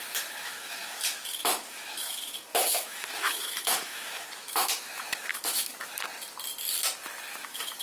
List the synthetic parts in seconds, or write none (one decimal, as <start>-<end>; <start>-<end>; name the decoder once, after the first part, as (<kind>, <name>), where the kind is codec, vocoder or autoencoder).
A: 0.0-5.9 (autoencoder, DAC-VAE); 7.3-7.8

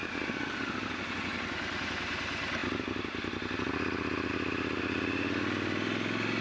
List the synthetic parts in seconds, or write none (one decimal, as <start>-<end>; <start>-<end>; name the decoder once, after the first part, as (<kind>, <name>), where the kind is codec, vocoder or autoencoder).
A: none